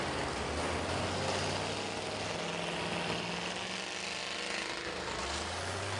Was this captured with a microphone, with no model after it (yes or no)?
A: yes